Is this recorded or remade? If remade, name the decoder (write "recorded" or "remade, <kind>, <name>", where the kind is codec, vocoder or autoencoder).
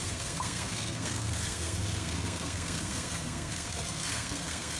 remade, codec, SNAC